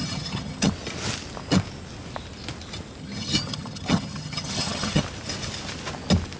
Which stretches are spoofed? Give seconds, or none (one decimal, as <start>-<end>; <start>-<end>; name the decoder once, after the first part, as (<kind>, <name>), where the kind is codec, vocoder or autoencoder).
0.0-0.7 (vocoder, HiFi-GAN); 3.0-5.0